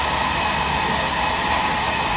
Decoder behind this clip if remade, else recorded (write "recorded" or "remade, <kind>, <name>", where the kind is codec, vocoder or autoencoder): recorded